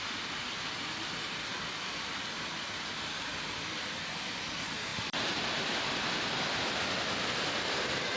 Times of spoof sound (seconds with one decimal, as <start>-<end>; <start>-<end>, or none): 0.0-1.5; 3.4-8.2